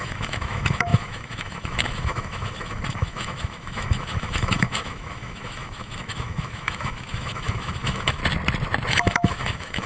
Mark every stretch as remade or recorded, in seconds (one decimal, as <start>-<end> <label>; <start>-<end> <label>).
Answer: 0.0-8.2 remade; 8.2-8.9 recorded; 8.9-9.9 remade